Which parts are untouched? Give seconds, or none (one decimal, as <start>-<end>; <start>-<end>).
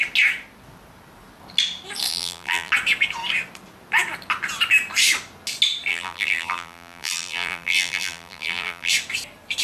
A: 0.0-2.1; 2.7-5.9; 8.9-9.6